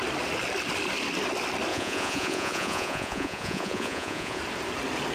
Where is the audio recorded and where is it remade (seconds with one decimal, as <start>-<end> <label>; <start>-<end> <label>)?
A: 0.0-1.7 recorded; 1.7-4.4 remade; 4.4-5.1 recorded